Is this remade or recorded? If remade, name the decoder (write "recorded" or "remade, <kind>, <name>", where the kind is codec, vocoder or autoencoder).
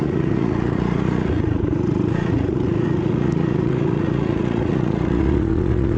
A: remade, vocoder, Vocos